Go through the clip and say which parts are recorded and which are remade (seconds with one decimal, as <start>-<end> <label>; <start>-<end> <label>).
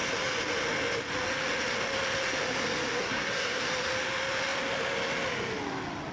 0.0-3.0 recorded; 3.0-3.6 remade; 3.6-6.1 recorded